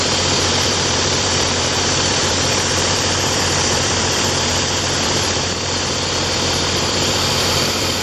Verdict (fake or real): fake